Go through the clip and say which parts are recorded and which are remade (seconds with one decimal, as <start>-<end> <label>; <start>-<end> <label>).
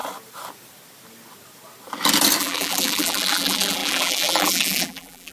0.0-2.4 recorded; 2.4-5.3 remade